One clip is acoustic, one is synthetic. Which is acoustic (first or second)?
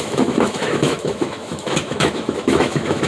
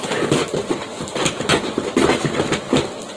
second